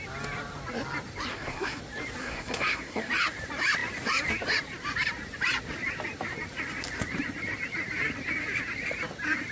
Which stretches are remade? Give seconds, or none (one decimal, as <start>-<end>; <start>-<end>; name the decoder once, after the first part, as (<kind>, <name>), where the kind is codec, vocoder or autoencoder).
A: 1.3-1.8 (codec, SNAC); 2.2-3.1